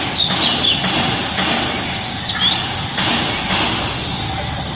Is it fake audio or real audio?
real